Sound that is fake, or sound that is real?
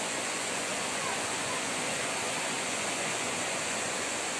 fake